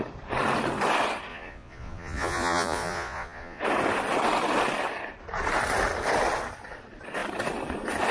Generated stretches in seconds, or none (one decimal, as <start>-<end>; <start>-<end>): 1.3-3.6